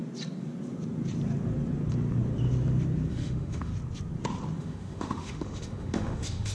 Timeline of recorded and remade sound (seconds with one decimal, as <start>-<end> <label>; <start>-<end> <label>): 0.0-3.1 recorded; 3.1-3.7 remade; 3.7-4.6 recorded; 4.6-6.5 remade